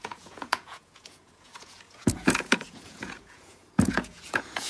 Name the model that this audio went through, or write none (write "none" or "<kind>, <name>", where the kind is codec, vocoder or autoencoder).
vocoder, Vocos